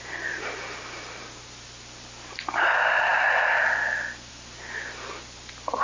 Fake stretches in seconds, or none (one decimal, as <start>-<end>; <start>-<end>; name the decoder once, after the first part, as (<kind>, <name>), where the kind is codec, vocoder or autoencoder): none